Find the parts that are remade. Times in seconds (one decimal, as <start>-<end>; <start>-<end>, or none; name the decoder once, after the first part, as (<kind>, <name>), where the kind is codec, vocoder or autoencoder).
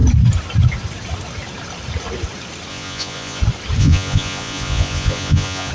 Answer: 2.7-3.4 (vocoder, Vocos); 3.8-5.7